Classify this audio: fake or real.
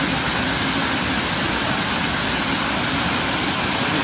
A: real